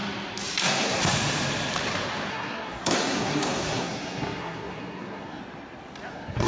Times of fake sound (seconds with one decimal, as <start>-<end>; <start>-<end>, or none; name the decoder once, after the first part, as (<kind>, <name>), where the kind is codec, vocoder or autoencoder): 0.6-1.1 (codec, SNAC); 2.3-5.4; 6.1-6.5